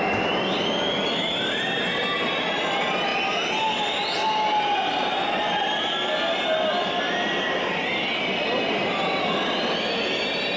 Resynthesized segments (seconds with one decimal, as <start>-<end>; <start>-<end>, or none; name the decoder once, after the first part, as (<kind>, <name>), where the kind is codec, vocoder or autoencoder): none